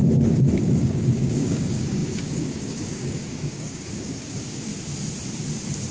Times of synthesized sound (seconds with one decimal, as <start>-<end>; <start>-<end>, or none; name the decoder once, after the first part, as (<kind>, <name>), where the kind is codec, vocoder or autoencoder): 0.6-4.7 (codec, DAC)